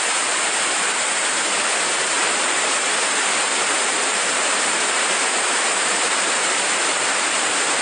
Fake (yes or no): yes